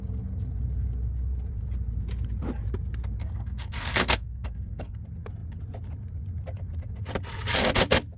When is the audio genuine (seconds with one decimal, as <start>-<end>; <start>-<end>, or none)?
0.0-3.2; 5.0-8.2